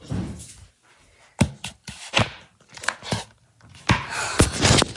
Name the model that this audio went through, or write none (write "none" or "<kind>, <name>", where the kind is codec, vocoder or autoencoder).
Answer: none